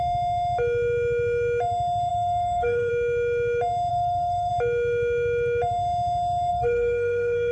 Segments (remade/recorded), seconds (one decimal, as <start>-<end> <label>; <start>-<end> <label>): 0.0-2.1 recorded; 2.1-2.9 remade; 2.9-3.9 recorded; 3.9-4.5 remade; 4.5-6.5 recorded; 6.5-7.5 remade